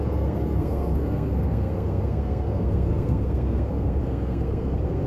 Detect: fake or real fake